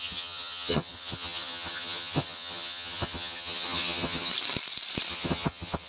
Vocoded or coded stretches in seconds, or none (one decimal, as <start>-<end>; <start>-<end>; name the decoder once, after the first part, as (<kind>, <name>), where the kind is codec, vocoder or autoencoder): 0.0-4.3 (vocoder, HiFi-GAN); 5.1-5.9

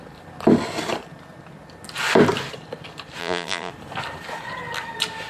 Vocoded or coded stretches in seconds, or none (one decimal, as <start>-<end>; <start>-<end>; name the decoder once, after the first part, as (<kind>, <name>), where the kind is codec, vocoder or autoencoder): 3.2-3.7 (vocoder, BigVGAN v2)